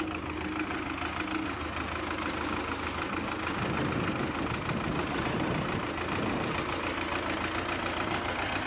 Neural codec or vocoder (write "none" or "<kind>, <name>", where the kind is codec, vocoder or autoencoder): none